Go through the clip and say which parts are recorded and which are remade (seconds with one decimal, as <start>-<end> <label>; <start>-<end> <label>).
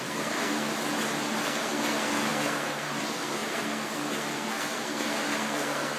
0.0-0.7 remade; 0.7-1.4 recorded; 1.4-6.0 remade